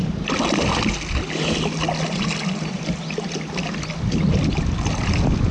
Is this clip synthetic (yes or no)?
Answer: no